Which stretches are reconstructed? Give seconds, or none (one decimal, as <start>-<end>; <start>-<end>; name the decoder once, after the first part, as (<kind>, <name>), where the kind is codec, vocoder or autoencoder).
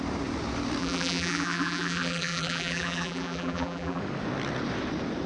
0.8-4.0 (vocoder, BigVGAN v2)